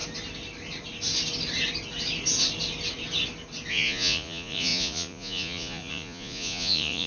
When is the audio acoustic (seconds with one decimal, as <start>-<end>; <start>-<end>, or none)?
0.0-3.7